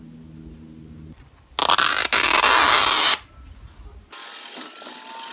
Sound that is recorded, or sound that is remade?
recorded